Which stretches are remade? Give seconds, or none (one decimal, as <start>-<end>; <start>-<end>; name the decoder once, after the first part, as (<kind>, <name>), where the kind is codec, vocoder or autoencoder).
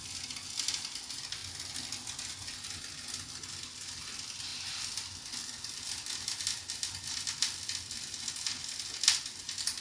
none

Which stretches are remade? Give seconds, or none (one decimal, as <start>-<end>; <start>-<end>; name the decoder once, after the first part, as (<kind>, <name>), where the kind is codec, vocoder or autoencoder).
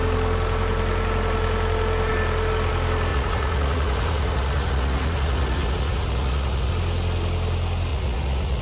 3.1-6.7 (vocoder, Vocos); 7.9-8.6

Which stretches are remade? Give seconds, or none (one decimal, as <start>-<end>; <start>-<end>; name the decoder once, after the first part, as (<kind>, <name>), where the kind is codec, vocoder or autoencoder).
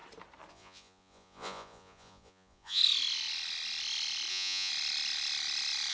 0.5-2.8 (vocoder, Vocos); 4.3-4.7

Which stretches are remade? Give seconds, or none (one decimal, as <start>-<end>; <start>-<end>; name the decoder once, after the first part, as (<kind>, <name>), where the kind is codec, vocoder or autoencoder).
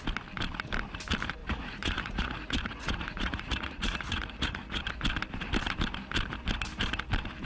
1.4-4.8 (vocoder, Vocos)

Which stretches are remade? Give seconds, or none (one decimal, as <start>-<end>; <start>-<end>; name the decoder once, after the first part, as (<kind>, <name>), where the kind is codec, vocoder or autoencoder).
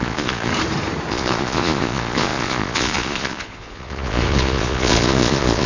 0.0-0.5 (vocoder, Vocos); 1.1-5.7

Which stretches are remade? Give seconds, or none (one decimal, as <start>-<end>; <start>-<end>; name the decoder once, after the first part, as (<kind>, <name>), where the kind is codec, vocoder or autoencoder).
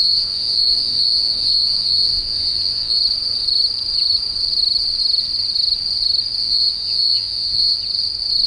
0.0-3.0 (vocoder, Vocos); 6.4-7.8